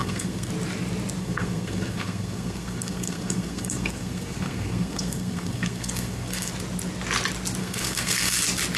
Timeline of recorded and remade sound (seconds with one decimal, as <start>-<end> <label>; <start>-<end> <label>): 0.0-0.5 remade; 0.5-1.2 recorded; 1.2-6.5 remade; 6.5-7.6 recorded; 7.6-8.4 remade; 8.4-8.8 recorded